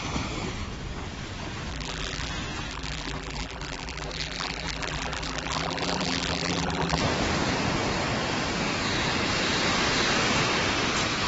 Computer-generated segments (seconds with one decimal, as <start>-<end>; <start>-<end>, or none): 1.7-2.3; 2.7-7.0